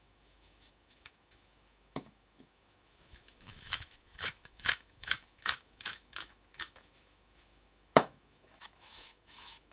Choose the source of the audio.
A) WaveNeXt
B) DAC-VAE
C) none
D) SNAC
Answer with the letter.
B